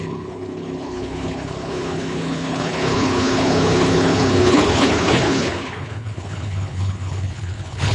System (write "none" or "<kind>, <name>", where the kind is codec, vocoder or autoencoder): codec, HILCodec